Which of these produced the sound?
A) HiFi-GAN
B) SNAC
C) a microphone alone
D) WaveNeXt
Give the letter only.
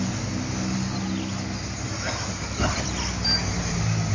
C